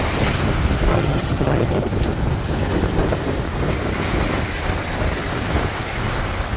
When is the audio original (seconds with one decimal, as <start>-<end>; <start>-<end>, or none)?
0.0-0.9; 1.8-6.6